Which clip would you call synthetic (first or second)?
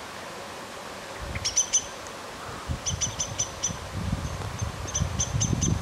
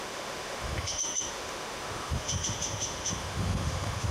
second